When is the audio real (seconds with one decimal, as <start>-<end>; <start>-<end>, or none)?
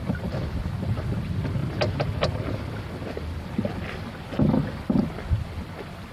0.0-6.1